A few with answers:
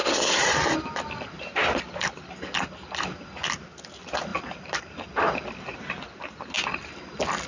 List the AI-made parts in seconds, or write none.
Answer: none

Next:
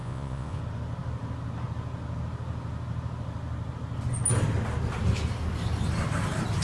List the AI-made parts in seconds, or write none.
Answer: 0.0-0.6 (vocoder, Vocos)